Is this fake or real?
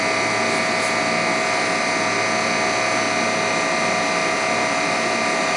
real